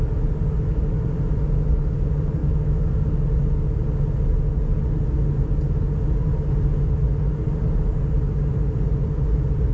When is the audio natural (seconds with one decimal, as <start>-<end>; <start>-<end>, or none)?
0.0-2.4; 2.9-9.7